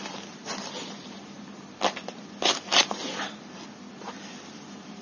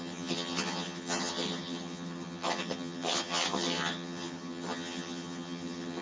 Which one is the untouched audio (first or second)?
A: first